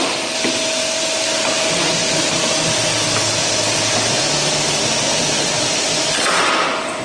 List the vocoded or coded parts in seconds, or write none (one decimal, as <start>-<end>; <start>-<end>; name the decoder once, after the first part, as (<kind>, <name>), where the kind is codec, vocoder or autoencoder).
none